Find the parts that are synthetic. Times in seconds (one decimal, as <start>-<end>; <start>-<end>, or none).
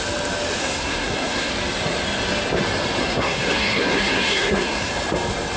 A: 0.6-1.5; 3.0-4.9